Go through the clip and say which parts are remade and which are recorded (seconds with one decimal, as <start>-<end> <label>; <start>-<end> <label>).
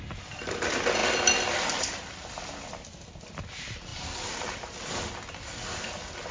0.0-1.0 remade; 1.0-1.8 recorded; 1.8-6.3 remade